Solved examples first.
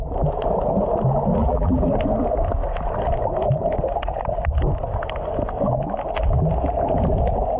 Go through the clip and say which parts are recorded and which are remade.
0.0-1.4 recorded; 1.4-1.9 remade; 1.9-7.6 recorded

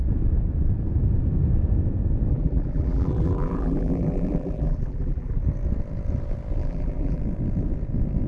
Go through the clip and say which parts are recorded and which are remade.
0.0-2.3 recorded; 2.3-5.4 remade; 5.4-6.6 recorded; 6.6-7.2 remade; 7.2-8.3 recorded

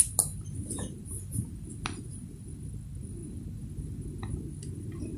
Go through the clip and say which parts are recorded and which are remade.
0.0-1.0 recorded; 1.0-1.6 remade; 1.6-5.2 recorded

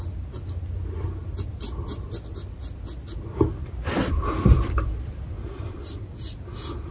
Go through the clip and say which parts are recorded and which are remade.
0.0-3.5 recorded; 3.5-6.1 remade; 6.1-6.9 recorded